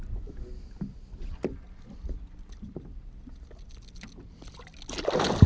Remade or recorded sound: recorded